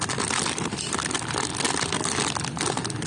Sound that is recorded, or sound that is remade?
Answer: recorded